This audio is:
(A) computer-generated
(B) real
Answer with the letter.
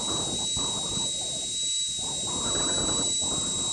B